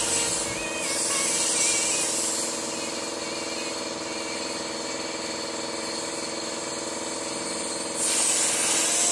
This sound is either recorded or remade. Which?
recorded